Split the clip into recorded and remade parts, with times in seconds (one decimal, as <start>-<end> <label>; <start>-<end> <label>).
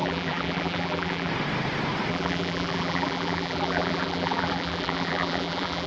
0.0-1.3 remade; 1.3-2.1 recorded; 2.1-5.9 remade